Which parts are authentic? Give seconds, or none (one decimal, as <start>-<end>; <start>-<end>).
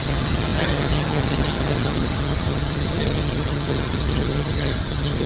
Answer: none